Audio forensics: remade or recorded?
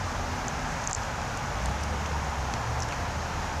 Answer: recorded